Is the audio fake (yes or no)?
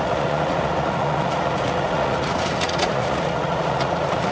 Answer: yes